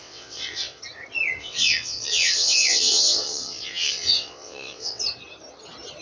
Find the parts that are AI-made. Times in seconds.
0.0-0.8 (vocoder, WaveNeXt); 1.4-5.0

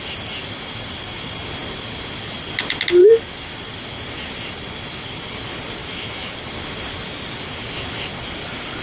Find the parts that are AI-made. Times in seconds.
5.8-6.3 (autoencoder, DAC-VAE)

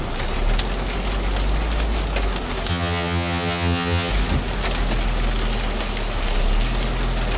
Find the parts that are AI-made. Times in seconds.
2.7-4.1 (vocoder, HiFi-GAN)

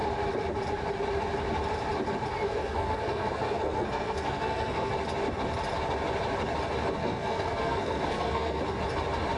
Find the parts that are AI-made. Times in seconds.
2.3-4.9 (codec, SNAC); 7.0-8.6

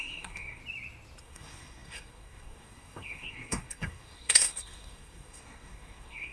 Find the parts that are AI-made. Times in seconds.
0.0-0.6 (codec, SNAC); 1.2-6.3